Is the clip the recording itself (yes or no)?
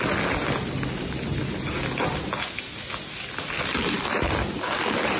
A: yes